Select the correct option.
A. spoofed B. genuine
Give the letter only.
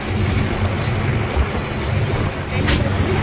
B